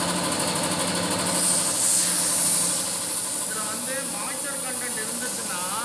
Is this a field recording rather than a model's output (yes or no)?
yes